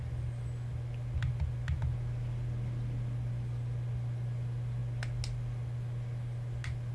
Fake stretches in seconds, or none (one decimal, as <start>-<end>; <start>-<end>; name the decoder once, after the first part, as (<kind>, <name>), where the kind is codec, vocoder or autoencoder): none